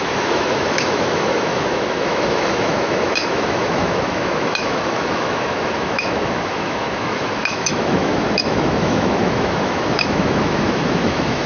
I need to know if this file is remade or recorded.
remade